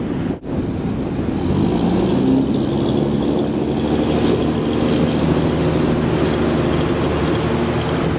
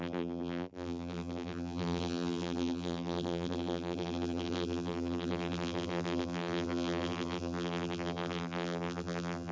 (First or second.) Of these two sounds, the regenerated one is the second